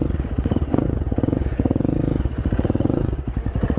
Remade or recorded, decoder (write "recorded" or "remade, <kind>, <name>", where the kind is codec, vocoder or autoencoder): remade, vocoder, Vocos